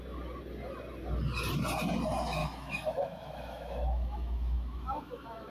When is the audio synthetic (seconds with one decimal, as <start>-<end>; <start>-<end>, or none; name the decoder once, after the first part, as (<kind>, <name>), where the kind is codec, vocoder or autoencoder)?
2.4-5.5 (autoencoder, DAC-VAE)